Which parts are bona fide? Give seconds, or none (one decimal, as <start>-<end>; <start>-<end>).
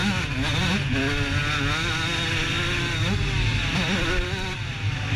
0.0-5.2